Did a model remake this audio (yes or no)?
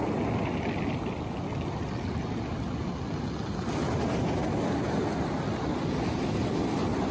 no